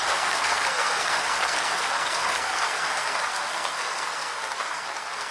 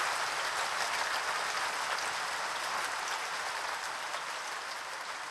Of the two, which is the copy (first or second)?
first